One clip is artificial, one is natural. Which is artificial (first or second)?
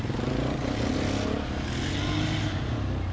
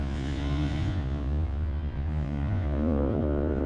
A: second